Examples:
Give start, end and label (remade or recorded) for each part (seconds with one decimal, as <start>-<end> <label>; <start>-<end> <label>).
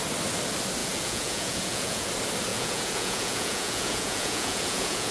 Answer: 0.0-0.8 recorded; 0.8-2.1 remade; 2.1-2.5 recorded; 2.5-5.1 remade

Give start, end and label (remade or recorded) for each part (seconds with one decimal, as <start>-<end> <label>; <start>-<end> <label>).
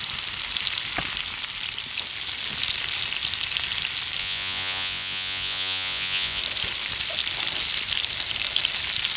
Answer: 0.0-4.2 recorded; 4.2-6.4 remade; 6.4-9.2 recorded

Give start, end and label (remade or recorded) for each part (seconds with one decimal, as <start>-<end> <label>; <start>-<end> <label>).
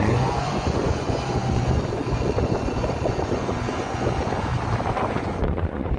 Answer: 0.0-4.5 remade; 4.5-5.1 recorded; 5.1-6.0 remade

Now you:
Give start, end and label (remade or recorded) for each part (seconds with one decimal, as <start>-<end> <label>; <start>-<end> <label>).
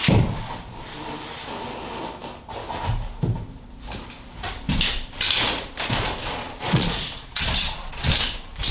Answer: 0.0-6.2 recorded; 6.2-8.1 remade; 8.1-8.7 recorded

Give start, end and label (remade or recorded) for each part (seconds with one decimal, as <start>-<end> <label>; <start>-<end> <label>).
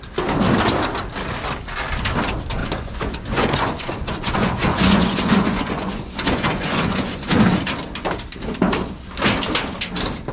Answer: 0.0-2.6 recorded; 2.6-7.4 remade; 7.4-10.3 recorded